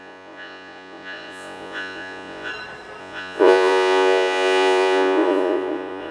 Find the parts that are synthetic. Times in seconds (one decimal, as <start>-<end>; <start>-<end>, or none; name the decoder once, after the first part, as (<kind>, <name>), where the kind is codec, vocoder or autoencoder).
0.0-2.5 (vocoder, Vocos); 3.0-6.1